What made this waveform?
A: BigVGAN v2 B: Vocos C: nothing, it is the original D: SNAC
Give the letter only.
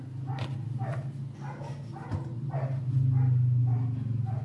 C